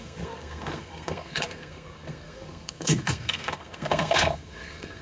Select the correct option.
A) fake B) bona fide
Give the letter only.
A